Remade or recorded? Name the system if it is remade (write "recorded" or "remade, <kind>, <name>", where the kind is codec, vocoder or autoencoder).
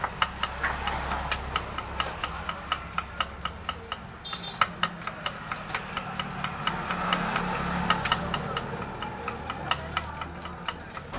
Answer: recorded